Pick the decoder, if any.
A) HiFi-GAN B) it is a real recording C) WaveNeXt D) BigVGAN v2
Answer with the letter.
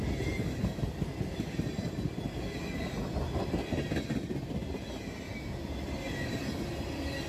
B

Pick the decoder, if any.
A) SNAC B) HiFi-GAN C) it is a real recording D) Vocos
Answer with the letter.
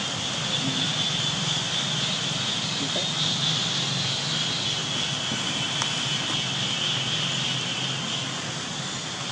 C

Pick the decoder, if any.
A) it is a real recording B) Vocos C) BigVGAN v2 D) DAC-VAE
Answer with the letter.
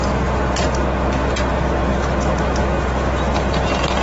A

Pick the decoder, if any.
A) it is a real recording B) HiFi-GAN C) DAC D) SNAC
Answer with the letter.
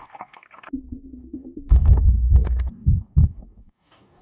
C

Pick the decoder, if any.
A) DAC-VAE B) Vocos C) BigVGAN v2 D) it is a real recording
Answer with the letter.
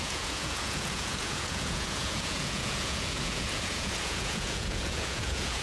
B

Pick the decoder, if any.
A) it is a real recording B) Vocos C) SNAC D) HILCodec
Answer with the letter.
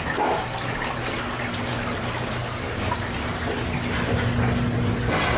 A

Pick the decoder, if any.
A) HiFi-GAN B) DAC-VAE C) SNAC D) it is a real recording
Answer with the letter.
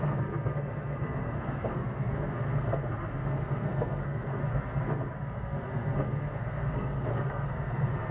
C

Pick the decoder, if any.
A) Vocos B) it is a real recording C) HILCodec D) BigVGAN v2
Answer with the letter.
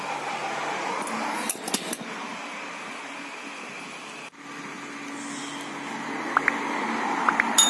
B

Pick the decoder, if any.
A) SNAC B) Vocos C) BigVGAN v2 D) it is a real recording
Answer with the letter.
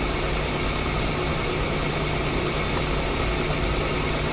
D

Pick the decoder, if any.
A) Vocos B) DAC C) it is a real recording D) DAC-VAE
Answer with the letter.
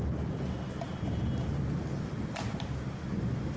C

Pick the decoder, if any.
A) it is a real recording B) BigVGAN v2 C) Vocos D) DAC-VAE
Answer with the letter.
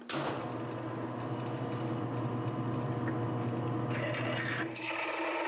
A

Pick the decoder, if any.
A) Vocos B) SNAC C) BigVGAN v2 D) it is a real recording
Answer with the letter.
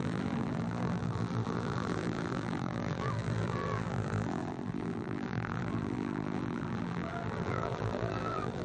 C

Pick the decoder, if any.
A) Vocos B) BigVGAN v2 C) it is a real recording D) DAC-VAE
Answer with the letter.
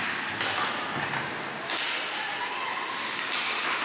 C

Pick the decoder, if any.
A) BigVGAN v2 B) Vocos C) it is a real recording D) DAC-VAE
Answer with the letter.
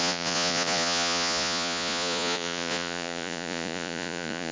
B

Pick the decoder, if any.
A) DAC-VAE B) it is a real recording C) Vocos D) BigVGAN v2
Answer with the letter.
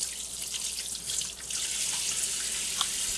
B